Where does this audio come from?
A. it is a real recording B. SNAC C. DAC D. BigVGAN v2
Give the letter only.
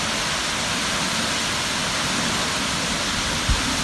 A